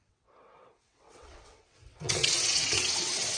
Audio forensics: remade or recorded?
remade